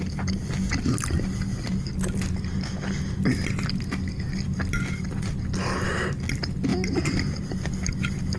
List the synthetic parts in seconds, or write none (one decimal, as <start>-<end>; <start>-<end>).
none